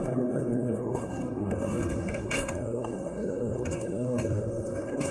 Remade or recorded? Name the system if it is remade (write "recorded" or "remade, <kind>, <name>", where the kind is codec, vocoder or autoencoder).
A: remade, codec, SNAC